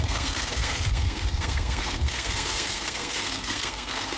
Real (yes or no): no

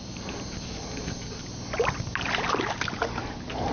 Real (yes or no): yes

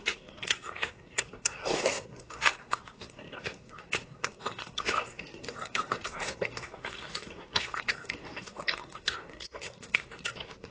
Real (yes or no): no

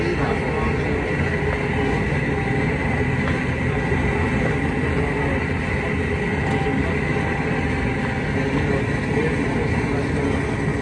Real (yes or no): yes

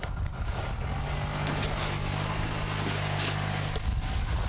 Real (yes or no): yes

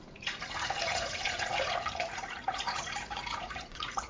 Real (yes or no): no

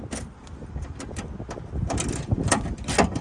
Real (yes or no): yes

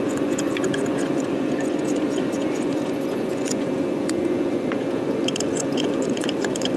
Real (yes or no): no